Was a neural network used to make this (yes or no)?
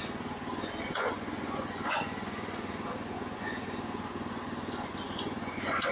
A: yes